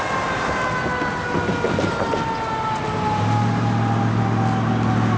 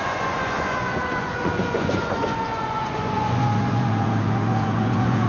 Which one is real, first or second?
first